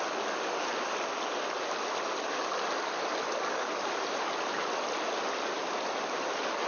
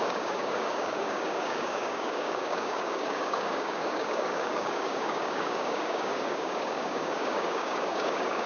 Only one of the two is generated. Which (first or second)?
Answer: second